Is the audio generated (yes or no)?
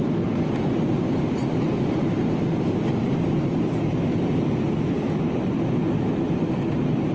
no